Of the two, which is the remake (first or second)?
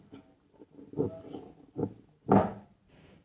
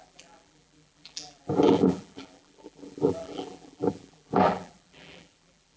second